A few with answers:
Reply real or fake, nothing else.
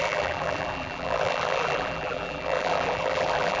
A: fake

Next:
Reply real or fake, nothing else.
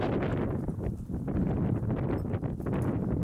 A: real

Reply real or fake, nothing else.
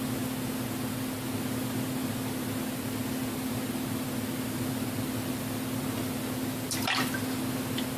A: real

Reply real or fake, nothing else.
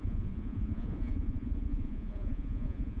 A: fake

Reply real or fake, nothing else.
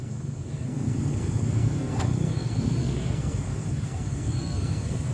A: fake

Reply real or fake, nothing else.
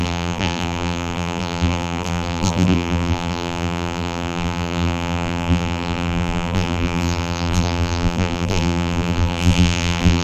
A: fake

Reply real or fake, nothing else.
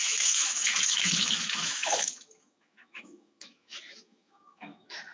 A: fake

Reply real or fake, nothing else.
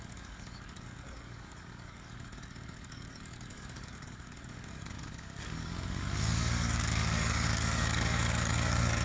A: fake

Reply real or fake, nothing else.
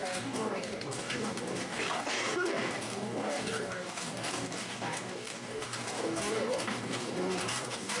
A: fake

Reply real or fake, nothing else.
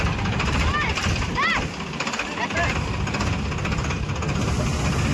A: real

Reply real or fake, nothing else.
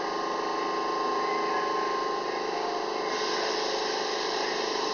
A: real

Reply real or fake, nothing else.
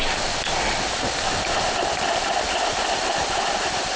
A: real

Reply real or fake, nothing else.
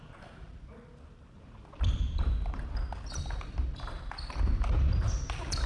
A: fake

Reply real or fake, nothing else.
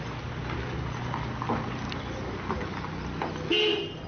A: real